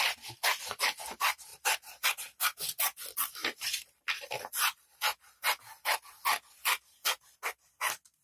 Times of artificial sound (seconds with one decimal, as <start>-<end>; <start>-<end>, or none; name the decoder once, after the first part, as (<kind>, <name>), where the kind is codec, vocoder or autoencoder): 1.5-2.1 (vocoder, BigVGAN v2); 3.4-5.6